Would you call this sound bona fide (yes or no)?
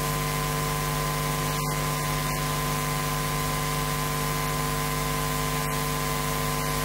yes